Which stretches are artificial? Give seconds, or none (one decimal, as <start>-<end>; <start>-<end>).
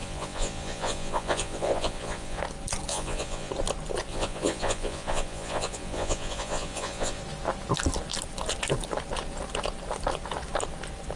0.0-2.4; 2.9-3.5; 4.1-7.2